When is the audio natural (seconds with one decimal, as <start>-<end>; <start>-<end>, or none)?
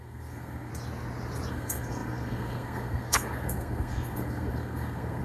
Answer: 0.7-1.5